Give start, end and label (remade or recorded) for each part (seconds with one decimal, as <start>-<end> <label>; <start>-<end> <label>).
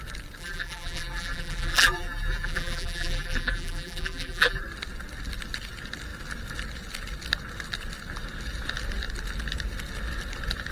0.0-0.4 recorded; 0.4-4.6 remade; 4.6-10.7 recorded